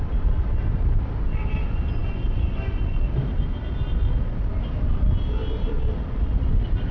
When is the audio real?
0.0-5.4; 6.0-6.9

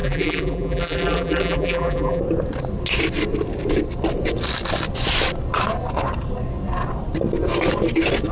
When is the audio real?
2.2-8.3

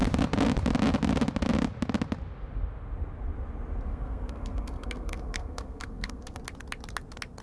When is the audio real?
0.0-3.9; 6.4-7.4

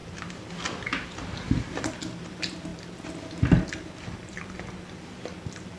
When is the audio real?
0.0-5.8